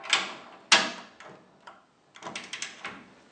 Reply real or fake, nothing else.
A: real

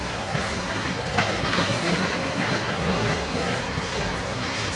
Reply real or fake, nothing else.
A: fake